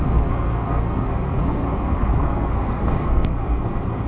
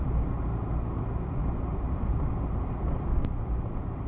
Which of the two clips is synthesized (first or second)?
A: first